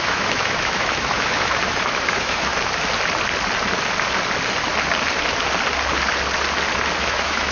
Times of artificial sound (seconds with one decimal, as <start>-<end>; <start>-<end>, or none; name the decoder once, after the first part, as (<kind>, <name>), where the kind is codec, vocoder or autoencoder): 0.0-2.5 (autoencoder, DAC-VAE); 7.0-7.5